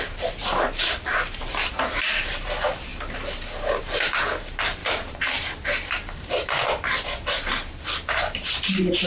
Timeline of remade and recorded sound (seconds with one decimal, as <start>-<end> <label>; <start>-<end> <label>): 0.0-2.9 remade; 2.9-3.8 recorded; 3.8-6.6 remade; 6.6-9.1 recorded